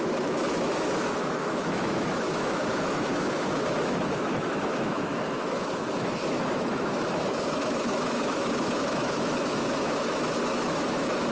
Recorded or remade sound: remade